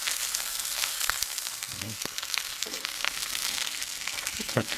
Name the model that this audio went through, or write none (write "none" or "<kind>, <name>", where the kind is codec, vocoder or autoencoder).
codec, SNAC